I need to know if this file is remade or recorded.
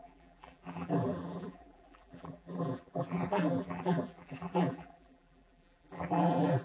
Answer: remade